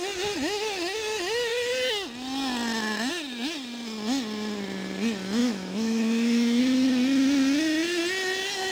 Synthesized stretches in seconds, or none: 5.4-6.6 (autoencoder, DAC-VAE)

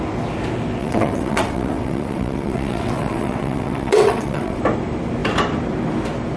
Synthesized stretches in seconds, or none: 0.8-4.6 (vocoder, WaveNeXt)

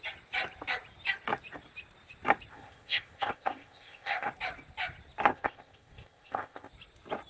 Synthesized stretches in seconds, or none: 2.5-4.3 (codec, ZipCodec); 5.3-6.7